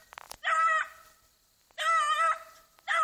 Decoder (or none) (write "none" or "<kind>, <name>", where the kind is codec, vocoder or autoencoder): none